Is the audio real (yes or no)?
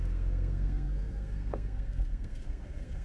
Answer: no